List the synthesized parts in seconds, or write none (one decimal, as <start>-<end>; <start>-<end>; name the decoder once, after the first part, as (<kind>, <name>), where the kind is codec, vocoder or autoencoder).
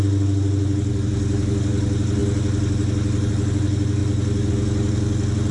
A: none